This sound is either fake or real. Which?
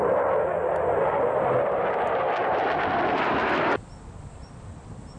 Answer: fake